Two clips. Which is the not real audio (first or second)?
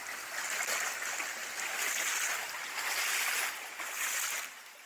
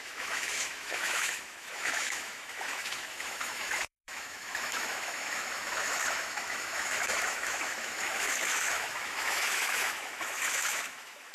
second